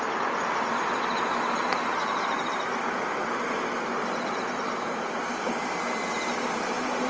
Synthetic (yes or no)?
no